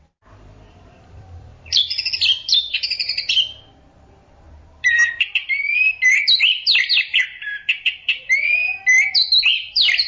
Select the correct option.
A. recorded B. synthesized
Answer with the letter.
B